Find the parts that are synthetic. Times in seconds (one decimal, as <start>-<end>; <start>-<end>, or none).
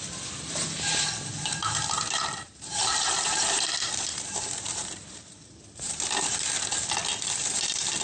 1.6-6.3